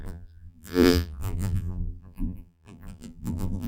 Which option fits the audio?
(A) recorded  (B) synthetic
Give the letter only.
B